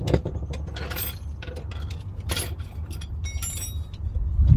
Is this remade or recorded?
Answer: recorded